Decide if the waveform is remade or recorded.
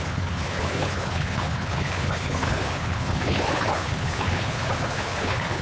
remade